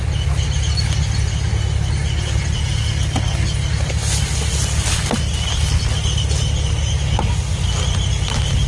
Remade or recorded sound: recorded